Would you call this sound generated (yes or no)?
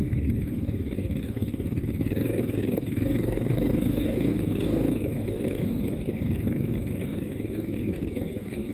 yes